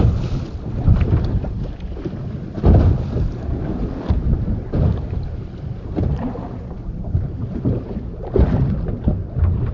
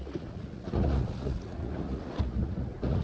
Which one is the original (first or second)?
first